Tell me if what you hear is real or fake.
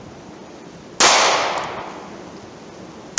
real